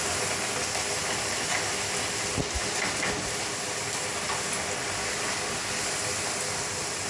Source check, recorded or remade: recorded